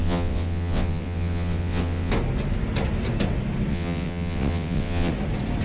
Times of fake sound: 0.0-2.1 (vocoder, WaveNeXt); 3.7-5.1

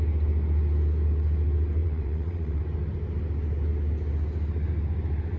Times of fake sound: 1.8-2.6 (vocoder, WaveNeXt)

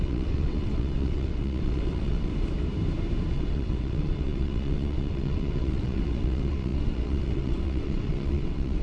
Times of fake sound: 0.0-2.3 (vocoder, WaveNeXt); 3.3-8.8

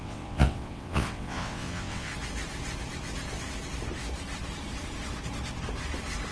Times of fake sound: 0.0-2.1 (vocoder, WaveNeXt)

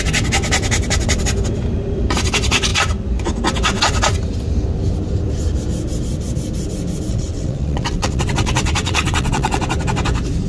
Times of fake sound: 7.1-9.6 (vocoder, WaveNeXt)